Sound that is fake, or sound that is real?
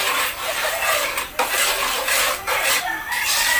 fake